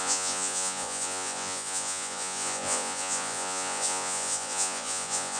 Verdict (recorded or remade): remade